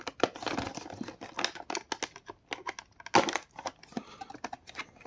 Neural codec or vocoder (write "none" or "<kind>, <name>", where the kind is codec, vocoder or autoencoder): none